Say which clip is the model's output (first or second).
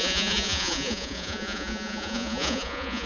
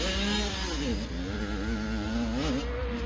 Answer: first